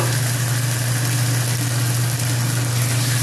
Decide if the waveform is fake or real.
real